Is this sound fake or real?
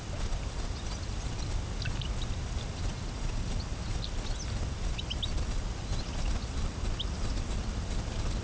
real